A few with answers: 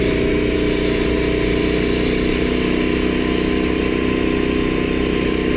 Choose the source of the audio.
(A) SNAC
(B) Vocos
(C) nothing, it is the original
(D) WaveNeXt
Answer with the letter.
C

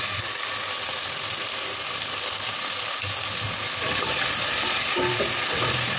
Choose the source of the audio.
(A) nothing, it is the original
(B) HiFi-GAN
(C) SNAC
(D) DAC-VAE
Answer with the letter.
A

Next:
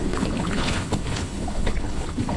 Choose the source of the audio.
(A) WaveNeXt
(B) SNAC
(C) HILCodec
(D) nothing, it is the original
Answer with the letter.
C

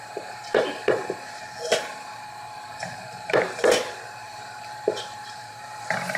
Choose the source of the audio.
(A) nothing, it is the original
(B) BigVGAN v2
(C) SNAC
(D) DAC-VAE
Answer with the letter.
B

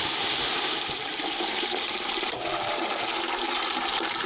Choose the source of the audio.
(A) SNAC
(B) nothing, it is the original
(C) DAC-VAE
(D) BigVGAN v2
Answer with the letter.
D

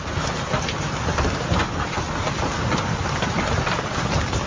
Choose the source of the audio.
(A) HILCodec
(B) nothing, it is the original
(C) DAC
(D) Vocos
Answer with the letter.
B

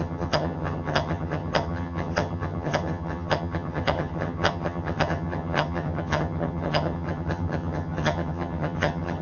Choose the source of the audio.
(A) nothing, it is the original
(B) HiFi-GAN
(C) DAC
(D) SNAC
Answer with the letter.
B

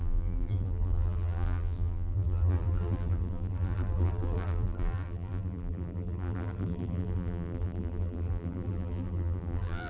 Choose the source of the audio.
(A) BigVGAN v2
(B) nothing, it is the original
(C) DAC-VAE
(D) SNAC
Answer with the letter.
A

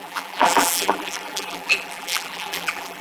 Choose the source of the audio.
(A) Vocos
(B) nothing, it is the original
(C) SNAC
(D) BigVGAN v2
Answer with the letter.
D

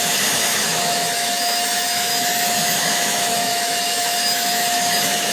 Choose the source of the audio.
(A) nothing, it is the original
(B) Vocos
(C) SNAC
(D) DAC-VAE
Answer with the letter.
D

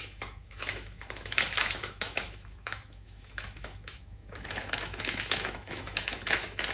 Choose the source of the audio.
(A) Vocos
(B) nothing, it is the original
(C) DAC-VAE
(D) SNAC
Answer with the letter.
C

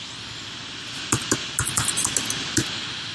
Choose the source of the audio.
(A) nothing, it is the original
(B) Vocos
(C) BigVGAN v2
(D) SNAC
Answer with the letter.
A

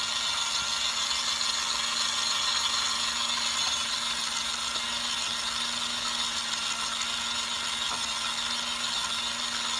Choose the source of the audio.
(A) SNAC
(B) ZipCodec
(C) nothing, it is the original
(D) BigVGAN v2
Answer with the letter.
C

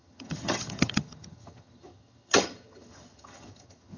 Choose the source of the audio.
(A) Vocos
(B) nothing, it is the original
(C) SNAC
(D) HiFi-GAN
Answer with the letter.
D